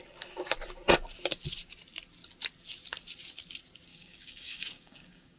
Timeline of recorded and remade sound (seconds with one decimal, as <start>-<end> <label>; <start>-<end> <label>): 0.0-3.9 recorded; 3.9-5.4 remade